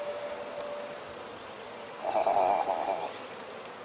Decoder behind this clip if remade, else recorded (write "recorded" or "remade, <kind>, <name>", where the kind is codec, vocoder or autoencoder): recorded